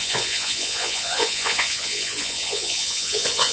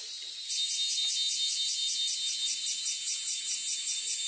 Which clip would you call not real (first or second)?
first